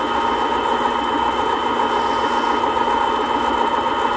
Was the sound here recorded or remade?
recorded